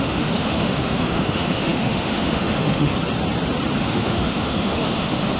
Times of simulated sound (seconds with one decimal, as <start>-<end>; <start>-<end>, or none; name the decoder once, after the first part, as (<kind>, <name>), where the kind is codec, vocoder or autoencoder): 0.0-2.9 (autoencoder, DAC-VAE); 3.8-5.4